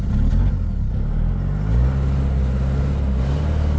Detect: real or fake real